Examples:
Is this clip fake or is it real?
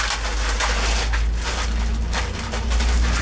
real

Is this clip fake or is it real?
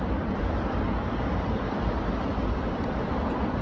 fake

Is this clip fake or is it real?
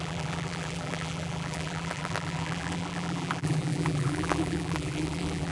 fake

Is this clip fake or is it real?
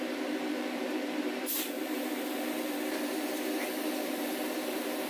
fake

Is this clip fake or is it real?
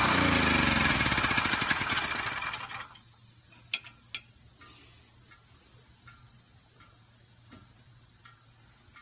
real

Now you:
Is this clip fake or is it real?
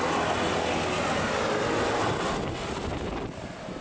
real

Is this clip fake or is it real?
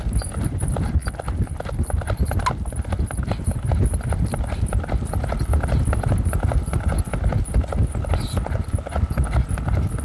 real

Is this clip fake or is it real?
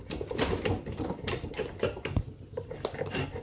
fake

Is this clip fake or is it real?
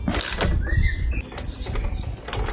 real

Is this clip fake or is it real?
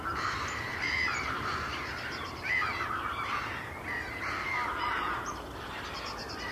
fake